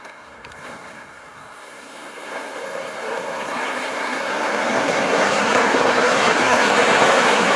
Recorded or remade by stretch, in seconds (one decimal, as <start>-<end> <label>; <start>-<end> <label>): 0.0-7.6 remade